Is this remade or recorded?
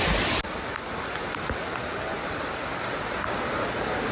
recorded